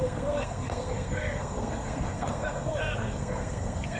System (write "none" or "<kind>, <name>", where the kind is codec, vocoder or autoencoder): codec, SNAC